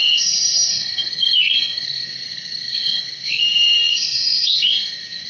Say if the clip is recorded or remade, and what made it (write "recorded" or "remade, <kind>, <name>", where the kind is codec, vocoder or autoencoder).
remade, codec, SNAC